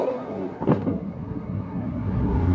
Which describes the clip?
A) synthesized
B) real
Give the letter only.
A